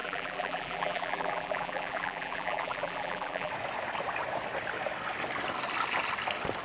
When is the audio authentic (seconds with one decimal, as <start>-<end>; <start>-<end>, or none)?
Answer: 3.5-6.6